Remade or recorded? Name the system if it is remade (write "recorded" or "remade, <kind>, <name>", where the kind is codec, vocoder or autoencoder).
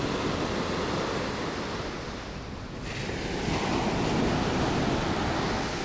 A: recorded